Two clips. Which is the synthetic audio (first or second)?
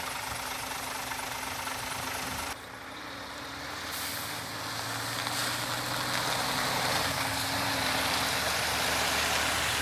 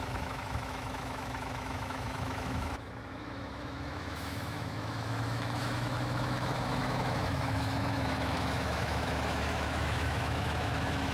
second